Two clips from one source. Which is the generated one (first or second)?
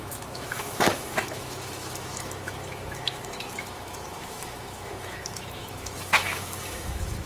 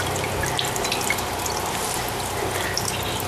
first